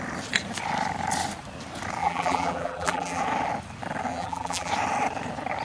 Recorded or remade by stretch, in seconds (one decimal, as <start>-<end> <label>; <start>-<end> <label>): 0.0-2.0 recorded; 2.0-3.2 remade; 3.2-4.1 recorded; 4.1-4.7 remade; 4.7-5.6 recorded